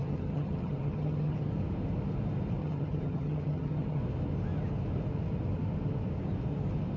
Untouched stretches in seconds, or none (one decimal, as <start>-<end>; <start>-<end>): 1.5-2.6; 4.0-7.0